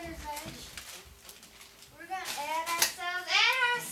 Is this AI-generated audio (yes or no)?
no